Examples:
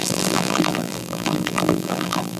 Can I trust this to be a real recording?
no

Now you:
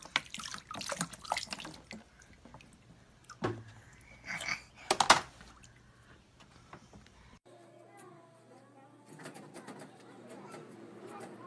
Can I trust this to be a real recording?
yes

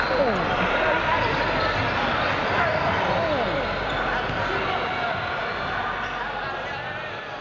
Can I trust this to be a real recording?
yes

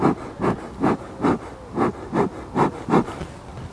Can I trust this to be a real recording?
yes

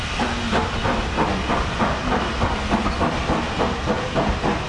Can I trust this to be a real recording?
yes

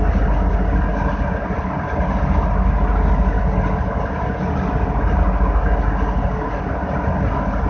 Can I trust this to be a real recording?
yes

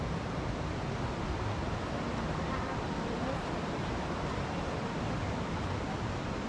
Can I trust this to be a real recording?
yes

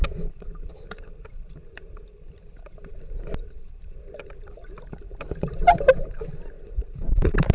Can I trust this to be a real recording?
no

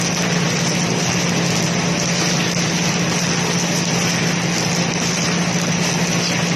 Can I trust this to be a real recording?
yes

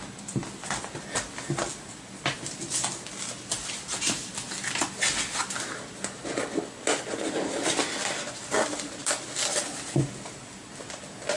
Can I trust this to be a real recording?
yes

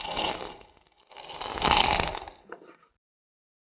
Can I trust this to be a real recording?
yes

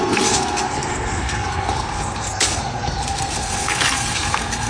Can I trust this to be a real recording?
no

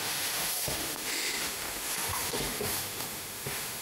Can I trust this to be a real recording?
no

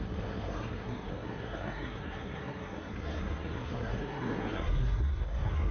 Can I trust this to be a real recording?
no